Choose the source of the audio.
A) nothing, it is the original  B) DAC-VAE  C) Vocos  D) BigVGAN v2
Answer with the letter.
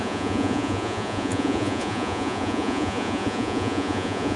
C